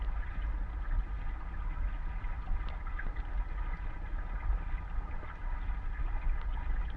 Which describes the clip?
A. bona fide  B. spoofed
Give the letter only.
A